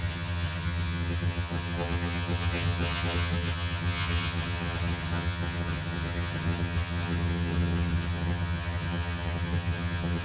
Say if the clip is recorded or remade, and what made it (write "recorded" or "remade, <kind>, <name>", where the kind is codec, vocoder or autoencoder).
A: remade, vocoder, HiFi-GAN